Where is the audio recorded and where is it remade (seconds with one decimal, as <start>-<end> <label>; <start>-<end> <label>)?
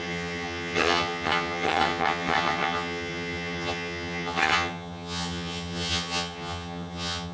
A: 0.0-7.3 remade